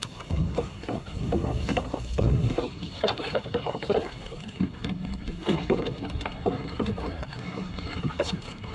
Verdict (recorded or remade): remade